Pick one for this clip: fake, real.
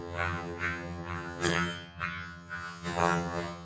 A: fake